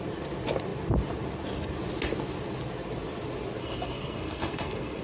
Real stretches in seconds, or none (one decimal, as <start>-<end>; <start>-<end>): 0.0-3.6